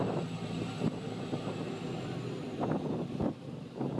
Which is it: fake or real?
real